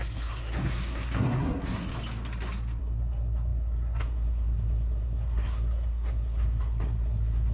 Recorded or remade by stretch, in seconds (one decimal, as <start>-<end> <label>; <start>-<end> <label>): 0.0-1.9 remade; 1.9-2.8 recorded; 2.8-7.5 remade